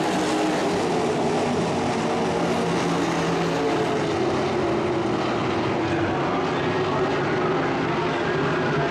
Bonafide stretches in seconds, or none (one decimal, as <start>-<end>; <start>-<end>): 0.0-8.9